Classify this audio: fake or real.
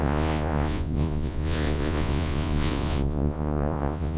fake